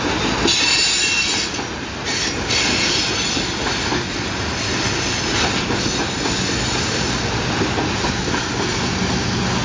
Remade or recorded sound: recorded